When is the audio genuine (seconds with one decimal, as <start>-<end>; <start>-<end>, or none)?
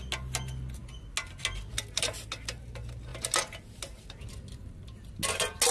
0.0-5.7